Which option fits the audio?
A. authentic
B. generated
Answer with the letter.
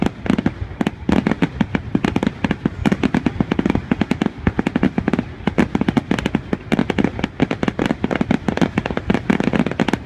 A